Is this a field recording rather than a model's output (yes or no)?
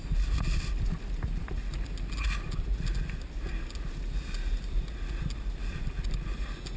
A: yes